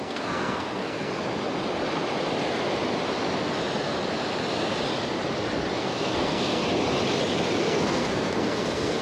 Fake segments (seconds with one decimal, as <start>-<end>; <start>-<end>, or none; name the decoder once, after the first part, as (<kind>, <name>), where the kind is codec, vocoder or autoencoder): 0.0-1.1 (codec, SNAC); 5.8-6.6; 7.6-9.0